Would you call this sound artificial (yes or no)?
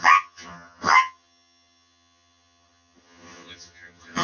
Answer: yes